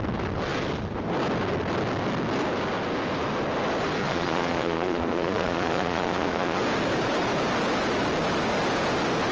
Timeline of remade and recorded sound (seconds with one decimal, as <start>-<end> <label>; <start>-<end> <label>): 0.0-4.0 recorded; 4.0-6.6 remade; 6.6-9.3 recorded

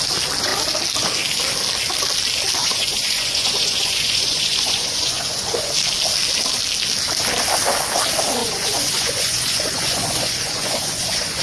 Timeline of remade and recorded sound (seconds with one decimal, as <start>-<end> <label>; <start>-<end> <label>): 0.0-2.6 recorded; 2.6-5.7 remade; 5.7-8.4 recorded; 8.4-11.4 remade

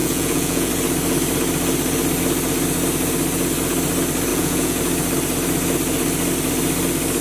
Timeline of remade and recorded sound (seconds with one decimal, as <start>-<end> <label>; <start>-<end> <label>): 0.0-0.7 remade; 0.7-4.3 recorded; 4.3-4.8 remade; 4.8-7.2 recorded

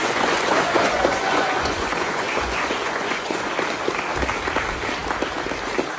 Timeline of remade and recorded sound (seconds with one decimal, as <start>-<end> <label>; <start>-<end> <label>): 0.0-3.5 remade; 3.5-6.0 recorded

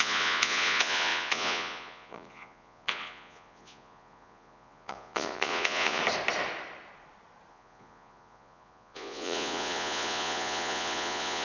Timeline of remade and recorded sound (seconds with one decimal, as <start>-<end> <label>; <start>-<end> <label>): 0.0-6.0 remade; 6.0-7.5 recorded; 7.5-11.4 remade

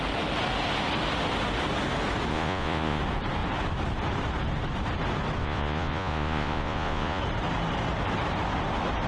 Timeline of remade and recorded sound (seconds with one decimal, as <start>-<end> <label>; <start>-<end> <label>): 0.0-2.3 recorded; 2.3-3.0 remade; 3.0-5.4 recorded; 5.4-7.2 remade; 7.2-9.1 recorded

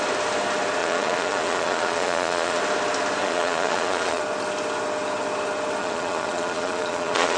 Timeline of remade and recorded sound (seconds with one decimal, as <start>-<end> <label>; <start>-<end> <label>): 0.0-0.8 recorded; 0.8-2.6 remade; 2.6-3.2 recorded; 3.2-4.2 remade; 4.2-5.8 recorded; 5.8-7.4 remade